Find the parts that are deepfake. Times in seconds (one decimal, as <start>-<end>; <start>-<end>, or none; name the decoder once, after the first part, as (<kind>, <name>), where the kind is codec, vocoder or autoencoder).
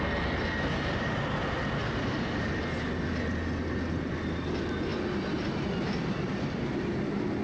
4.9-5.5 (vocoder, BigVGAN v2)